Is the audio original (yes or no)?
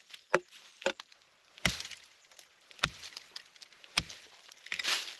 yes